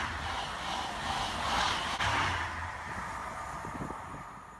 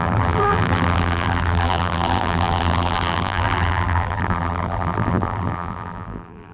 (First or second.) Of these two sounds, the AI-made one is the second